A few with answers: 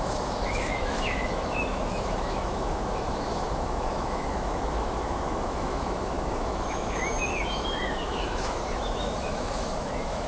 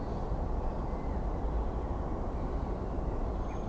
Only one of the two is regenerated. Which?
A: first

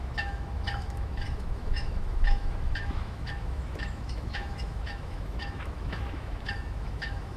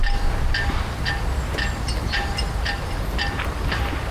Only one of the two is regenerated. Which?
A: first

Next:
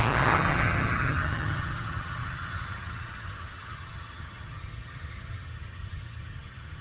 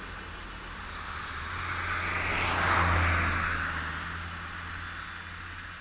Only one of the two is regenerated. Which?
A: first